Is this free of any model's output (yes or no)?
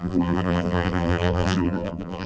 no